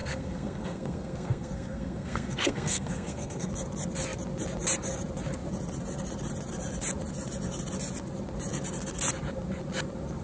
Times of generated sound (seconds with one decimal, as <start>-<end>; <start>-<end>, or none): 0.0-3.5